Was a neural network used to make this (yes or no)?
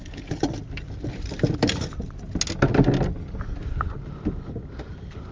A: no